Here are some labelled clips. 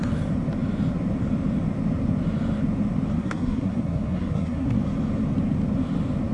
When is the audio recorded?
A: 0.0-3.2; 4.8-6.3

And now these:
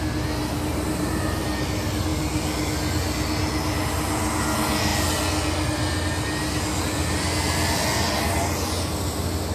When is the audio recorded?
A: 0.0-0.4; 1.4-9.5